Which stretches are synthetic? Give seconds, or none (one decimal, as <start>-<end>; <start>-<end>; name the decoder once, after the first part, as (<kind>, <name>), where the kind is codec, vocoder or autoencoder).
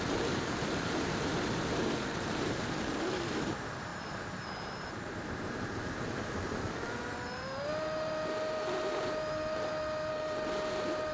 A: 0.0-11.1 (vocoder, BigVGAN v2)